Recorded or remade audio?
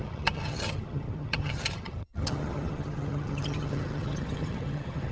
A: remade